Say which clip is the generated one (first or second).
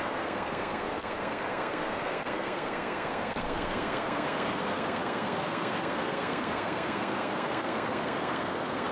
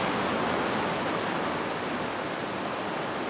first